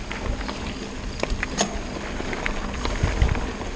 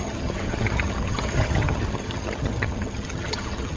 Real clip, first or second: first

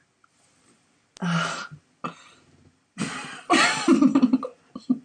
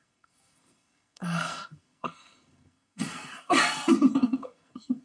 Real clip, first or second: first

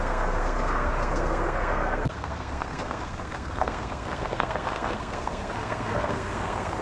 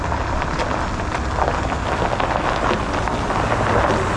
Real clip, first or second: second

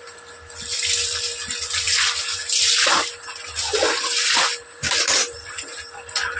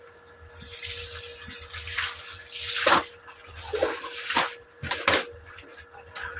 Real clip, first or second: second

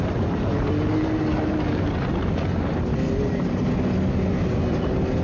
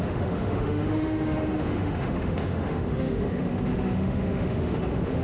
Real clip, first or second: first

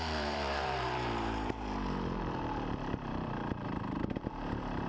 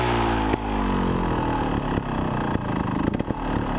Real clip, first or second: second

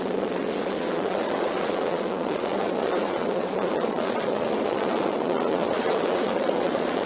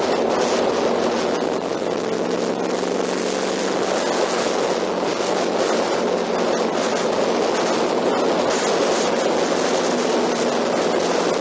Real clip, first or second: second